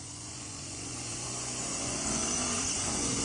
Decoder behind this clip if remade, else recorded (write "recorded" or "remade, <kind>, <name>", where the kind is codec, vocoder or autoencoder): remade, vocoder, Vocos